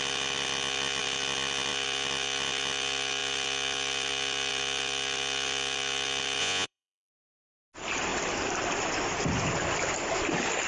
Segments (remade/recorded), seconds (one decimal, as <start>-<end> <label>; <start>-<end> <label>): 0.0-6.4 recorded; 6.4-7.4 remade; 7.4-10.7 recorded